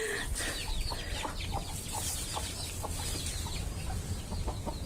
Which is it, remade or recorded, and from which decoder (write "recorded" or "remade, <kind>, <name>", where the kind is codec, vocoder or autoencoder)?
recorded